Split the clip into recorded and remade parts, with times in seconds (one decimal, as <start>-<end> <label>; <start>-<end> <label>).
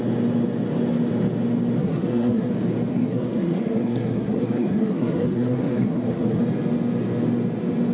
0.0-1.8 recorded; 1.8-2.5 remade; 2.5-2.9 recorded; 2.9-6.4 remade; 6.4-7.9 recorded